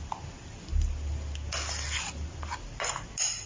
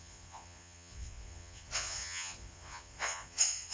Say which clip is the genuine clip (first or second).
first